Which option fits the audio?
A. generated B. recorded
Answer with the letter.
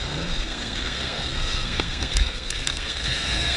A